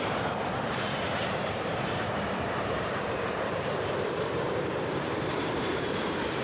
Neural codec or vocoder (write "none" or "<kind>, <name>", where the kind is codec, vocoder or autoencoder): vocoder, BigVGAN v2